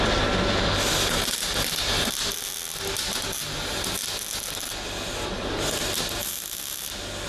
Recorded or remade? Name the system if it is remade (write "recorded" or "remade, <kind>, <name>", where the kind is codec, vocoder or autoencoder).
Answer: recorded